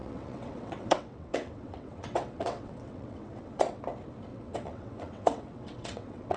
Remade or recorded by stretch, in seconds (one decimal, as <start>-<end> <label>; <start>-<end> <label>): 0.0-3.8 remade; 3.8-4.3 recorded; 4.3-6.4 remade